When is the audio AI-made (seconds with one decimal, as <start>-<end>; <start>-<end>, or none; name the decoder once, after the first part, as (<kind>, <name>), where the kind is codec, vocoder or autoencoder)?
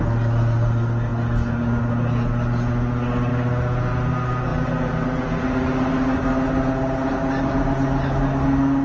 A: none